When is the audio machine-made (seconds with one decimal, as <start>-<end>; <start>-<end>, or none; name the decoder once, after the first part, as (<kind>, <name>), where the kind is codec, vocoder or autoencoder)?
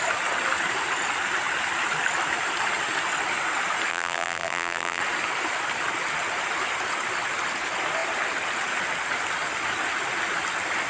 3.9-5.0 (vocoder, BigVGAN v2)